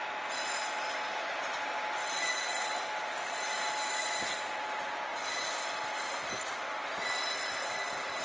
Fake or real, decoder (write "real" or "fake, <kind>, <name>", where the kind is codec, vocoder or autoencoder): real